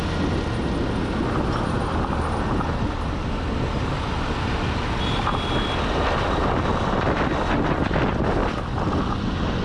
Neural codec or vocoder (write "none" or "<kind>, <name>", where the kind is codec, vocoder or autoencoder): none